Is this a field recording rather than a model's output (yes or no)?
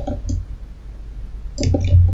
yes